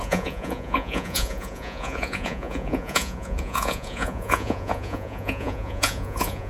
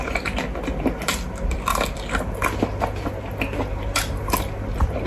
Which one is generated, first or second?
first